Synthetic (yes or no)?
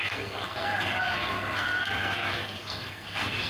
yes